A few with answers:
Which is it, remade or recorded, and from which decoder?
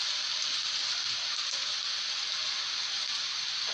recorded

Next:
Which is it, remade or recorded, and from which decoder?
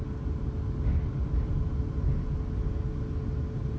recorded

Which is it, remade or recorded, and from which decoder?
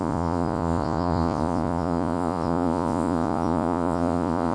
remade, vocoder, Vocos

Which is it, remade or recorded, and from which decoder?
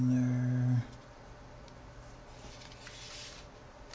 recorded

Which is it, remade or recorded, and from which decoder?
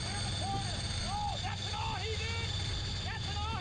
recorded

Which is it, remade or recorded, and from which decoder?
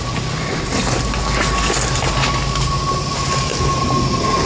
recorded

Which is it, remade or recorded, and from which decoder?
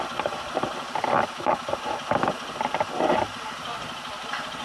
recorded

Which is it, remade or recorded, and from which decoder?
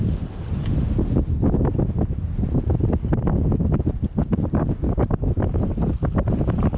recorded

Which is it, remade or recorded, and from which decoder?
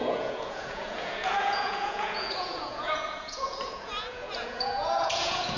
remade, vocoder, Vocos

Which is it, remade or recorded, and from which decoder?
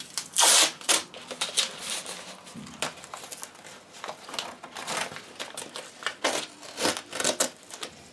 recorded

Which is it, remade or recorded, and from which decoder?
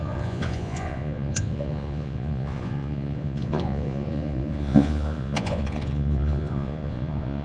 remade, vocoder, Vocos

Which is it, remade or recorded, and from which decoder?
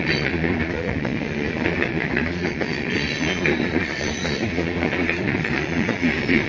remade, vocoder, Vocos